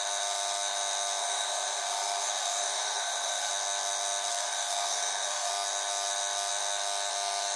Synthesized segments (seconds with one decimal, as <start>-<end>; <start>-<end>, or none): 1.2-3.5; 4.3-5.5